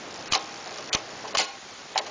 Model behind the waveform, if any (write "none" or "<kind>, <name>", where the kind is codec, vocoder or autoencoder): none